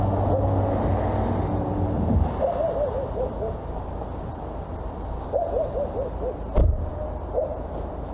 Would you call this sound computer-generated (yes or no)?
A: no